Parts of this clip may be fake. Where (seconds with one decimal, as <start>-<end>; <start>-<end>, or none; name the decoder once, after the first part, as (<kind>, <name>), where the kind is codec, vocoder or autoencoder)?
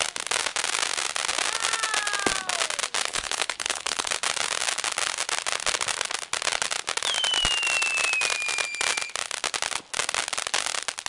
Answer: 3.1-4.1 (codec, HILCodec)